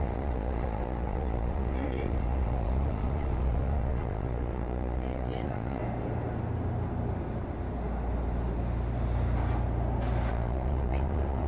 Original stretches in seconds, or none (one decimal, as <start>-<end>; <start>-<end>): 5.8-10.3